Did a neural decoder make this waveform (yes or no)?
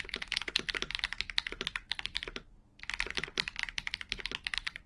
no